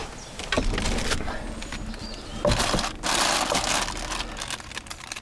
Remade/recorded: recorded